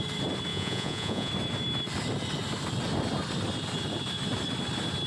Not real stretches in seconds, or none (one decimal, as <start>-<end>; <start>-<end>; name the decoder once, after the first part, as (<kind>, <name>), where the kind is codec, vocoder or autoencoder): 0.5-1.3 (vocoder, Vocos)